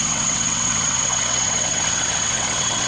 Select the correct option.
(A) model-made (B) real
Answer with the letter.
A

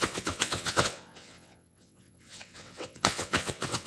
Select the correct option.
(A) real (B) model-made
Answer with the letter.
B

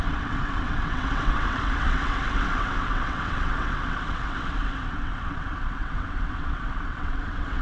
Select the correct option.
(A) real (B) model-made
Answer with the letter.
B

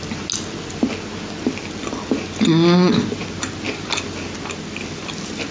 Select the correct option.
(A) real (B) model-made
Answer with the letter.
A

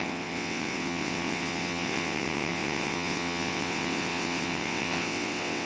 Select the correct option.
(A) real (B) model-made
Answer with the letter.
B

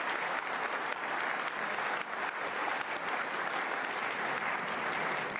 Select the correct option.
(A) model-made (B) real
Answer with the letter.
B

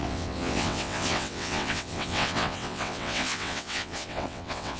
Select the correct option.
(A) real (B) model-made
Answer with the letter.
B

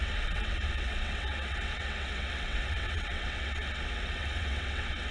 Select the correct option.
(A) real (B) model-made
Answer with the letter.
B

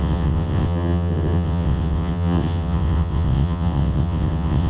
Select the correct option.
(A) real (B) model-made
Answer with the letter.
B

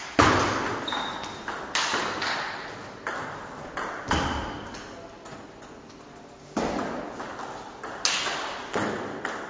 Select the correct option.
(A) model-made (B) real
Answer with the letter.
B